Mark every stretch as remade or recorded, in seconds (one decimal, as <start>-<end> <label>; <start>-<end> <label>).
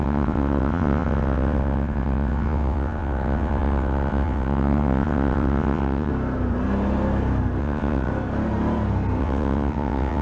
0.0-6.1 remade; 6.1-7.6 recorded; 7.6-8.1 remade; 8.1-9.2 recorded; 9.2-10.2 remade